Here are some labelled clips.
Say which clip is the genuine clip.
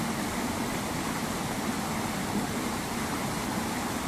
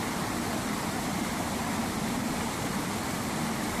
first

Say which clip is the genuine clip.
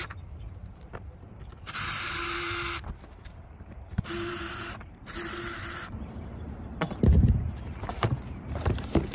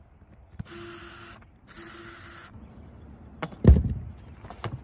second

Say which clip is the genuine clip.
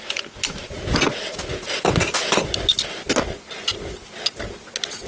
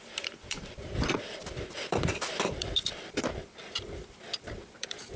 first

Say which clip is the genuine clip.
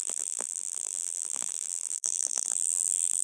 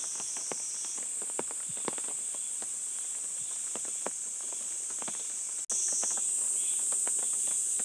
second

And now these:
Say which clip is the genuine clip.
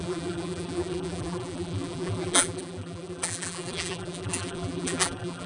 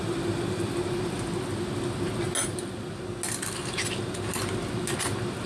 second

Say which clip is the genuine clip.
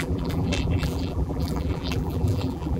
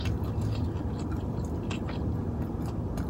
second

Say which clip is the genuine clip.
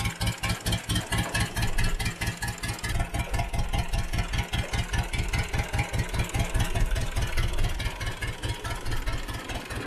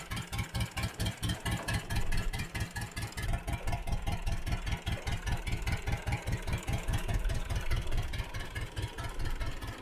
first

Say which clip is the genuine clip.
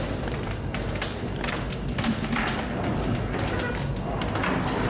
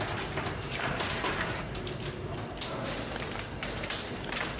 first